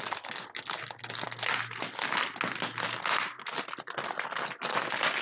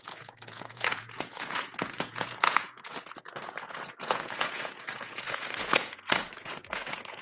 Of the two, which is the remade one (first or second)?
second